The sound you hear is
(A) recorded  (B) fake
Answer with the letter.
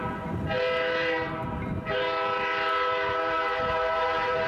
A